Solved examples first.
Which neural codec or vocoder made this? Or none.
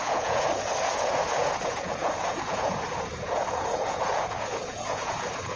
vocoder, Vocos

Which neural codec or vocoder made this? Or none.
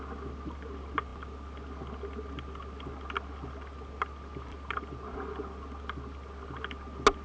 none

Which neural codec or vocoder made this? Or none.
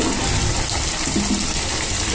none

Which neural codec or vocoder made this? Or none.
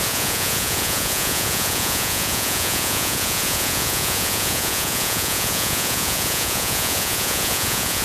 vocoder, Vocos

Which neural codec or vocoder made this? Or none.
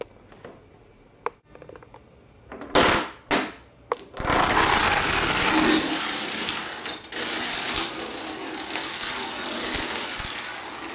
none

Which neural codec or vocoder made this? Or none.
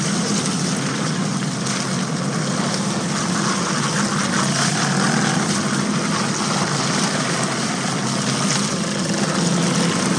none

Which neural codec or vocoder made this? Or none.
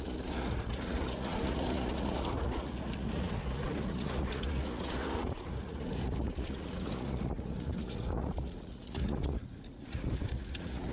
vocoder, Vocos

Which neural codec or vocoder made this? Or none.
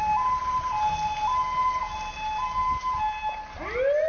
none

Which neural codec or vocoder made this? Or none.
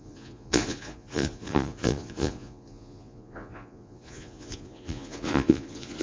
vocoder, Vocos